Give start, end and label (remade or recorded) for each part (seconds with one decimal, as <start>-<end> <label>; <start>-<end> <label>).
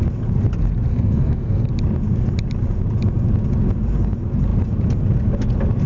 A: 0.0-0.9 recorded; 0.9-1.7 remade; 1.7-5.9 recorded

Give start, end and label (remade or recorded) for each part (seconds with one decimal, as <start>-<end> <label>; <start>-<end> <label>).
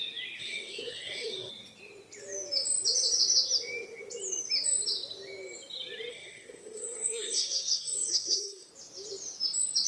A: 0.0-0.4 recorded; 0.4-1.5 remade; 1.5-6.1 recorded; 6.1-8.7 remade; 8.7-9.9 recorded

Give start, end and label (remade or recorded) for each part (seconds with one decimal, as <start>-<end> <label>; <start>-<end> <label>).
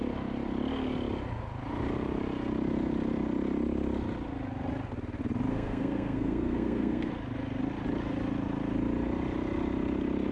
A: 0.0-5.5 recorded; 5.5-7.1 remade; 7.1-10.3 recorded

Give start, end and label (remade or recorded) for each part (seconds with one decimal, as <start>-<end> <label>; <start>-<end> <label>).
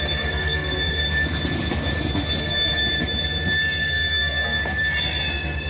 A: 0.0-1.0 remade; 1.0-2.4 recorded; 2.4-2.8 remade; 2.8-3.8 recorded; 3.8-4.6 remade; 4.6-5.3 recorded; 5.3-5.7 remade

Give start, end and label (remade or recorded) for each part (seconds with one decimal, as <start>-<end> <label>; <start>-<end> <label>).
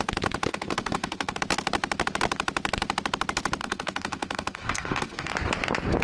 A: 0.0-0.5 recorded; 0.5-1.4 remade; 1.4-3.6 recorded; 3.6-5.3 remade; 5.3-6.0 recorded